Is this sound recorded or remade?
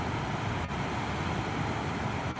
recorded